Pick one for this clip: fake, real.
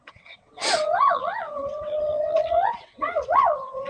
fake